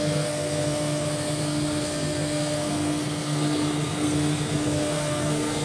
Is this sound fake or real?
fake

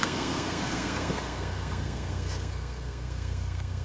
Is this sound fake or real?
fake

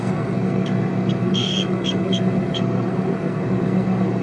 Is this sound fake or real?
fake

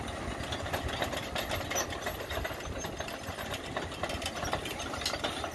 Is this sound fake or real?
real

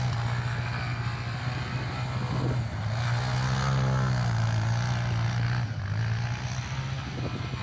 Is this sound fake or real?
real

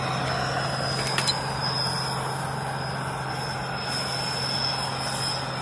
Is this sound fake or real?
real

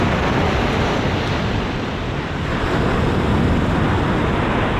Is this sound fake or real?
real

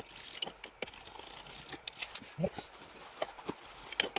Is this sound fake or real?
real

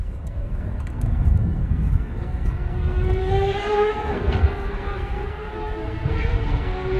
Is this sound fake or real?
fake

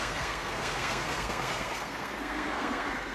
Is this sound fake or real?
fake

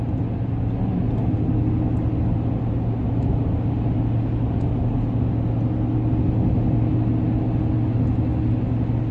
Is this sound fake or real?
real